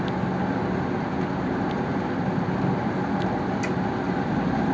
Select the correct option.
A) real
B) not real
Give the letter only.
A